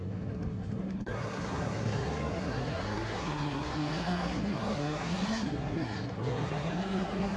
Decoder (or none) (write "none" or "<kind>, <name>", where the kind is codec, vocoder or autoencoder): codec, SNAC